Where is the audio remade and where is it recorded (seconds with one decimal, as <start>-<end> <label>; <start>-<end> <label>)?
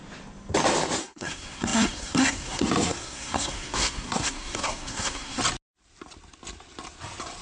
0.0-1.0 recorded; 1.0-5.4 remade; 5.4-7.4 recorded